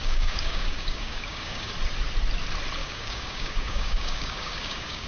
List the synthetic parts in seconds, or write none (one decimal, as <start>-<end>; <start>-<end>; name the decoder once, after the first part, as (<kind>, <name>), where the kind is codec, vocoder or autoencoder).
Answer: 0.0-1.7 (codec, DAC); 2.8-5.1